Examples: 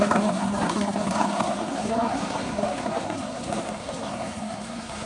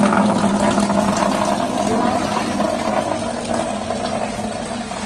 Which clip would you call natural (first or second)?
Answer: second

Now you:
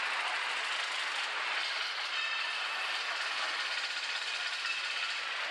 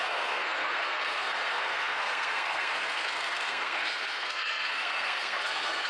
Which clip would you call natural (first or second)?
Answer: first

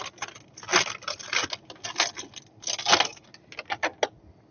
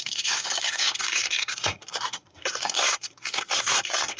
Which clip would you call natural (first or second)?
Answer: first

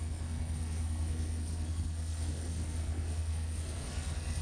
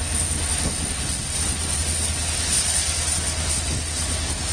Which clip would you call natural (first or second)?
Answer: second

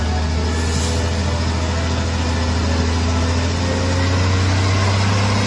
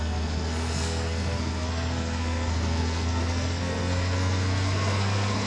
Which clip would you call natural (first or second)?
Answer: first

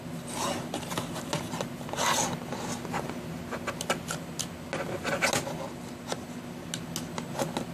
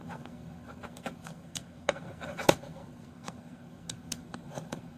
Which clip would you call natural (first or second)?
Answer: first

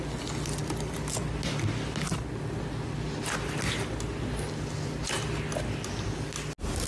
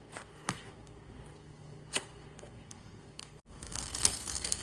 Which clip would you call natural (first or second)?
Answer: first